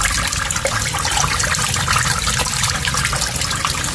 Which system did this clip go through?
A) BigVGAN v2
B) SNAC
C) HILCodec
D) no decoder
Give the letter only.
A